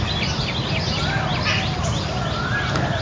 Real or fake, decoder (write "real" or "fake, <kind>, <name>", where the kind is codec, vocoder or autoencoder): real